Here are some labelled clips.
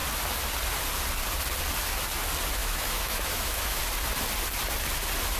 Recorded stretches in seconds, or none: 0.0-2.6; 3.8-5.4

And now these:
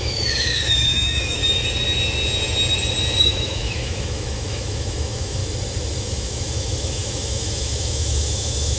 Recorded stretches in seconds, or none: 1.4-3.2; 5.4-6.0

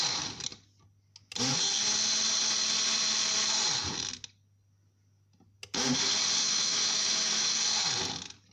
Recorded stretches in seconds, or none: 0.0-6.4; 7.5-8.5

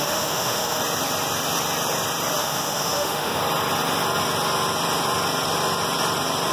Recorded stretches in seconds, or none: 0.8-2.4; 3.4-6.5

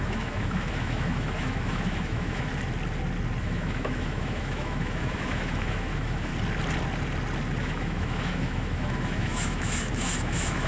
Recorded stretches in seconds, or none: 2.5-3.4; 6.3-7.6